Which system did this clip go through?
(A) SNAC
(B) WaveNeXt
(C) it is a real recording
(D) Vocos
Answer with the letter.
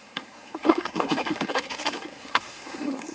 A